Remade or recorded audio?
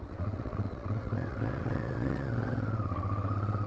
remade